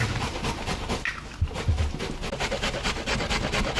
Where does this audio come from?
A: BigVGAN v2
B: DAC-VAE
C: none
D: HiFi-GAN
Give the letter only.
C